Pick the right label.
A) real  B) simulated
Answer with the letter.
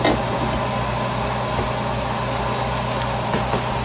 A